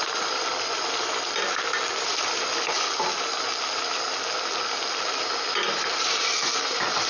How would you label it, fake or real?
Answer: real